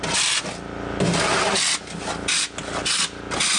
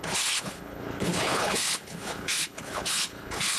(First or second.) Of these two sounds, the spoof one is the second